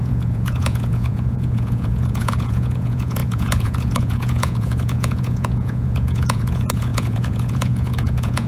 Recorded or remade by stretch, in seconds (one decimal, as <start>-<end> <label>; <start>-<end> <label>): 0.0-8.5 remade